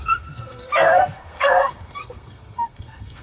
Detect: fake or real fake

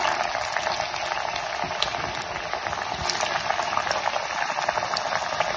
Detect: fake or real real